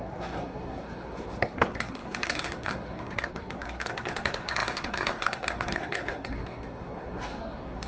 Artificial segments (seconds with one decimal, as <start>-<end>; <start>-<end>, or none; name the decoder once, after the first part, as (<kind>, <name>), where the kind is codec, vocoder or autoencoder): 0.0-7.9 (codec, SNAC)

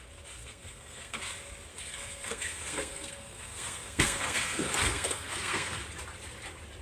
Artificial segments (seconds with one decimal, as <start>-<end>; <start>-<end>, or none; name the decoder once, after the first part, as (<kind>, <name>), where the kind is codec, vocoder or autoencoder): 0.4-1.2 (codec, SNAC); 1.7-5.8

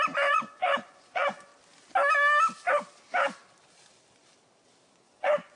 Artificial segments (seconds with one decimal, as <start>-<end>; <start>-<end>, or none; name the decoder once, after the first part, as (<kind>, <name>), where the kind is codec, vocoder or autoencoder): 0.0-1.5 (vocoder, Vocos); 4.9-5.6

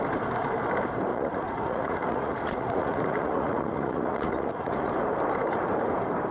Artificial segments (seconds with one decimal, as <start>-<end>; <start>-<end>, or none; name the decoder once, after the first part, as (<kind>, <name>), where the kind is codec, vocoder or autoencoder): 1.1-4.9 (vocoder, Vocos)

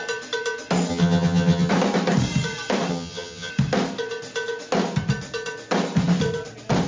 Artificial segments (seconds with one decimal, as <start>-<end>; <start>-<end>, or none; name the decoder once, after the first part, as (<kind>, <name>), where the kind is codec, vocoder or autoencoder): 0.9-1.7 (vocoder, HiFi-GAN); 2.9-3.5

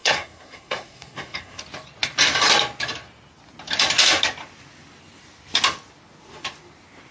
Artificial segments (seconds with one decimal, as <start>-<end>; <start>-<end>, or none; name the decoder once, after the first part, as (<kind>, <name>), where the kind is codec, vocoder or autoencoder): 0.0-1.6 (codec, SNAC)

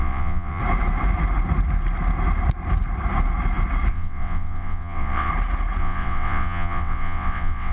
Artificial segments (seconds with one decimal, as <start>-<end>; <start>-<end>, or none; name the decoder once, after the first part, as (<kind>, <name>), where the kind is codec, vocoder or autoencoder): 0.0-0.6 (vocoder, WaveNeXt); 3.9-5.3; 5.8-7.7

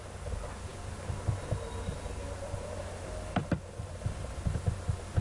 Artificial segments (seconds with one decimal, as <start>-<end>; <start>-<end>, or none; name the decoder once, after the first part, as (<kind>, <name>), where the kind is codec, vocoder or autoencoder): none